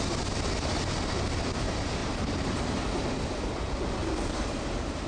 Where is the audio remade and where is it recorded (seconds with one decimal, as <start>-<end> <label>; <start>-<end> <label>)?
0.0-2.0 recorded; 2.0-3.0 remade; 3.0-4.0 recorded; 4.0-5.1 remade